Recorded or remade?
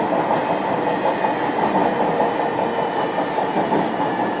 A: recorded